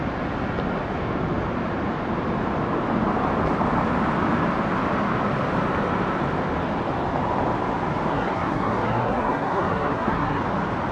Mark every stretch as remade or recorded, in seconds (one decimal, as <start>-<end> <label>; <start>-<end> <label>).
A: 0.0-8.1 recorded; 8.1-10.4 remade; 10.4-10.9 recorded